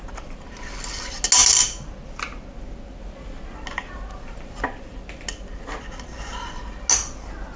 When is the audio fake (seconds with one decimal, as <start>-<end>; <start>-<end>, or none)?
none